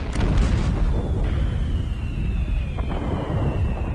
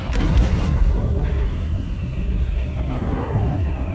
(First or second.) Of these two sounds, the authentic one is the first